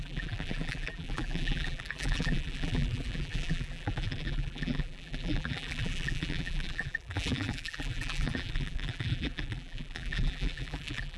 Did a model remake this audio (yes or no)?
yes